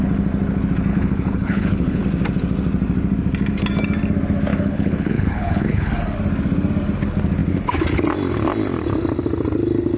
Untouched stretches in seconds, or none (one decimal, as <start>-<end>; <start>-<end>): 0.0-0.9; 2.0-4.5; 5.9-10.0